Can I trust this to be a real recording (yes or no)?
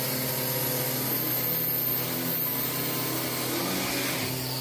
yes